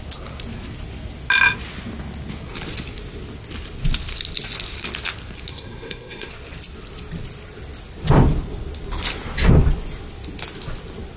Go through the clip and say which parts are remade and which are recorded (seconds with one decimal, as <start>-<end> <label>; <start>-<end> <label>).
0.0-5.5 recorded; 5.5-6.3 remade; 6.3-11.2 recorded